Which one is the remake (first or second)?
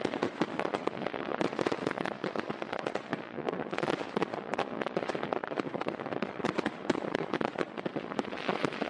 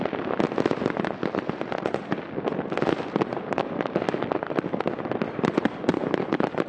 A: first